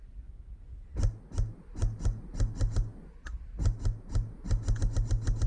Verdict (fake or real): real